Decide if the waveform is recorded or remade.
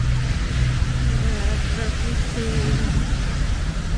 recorded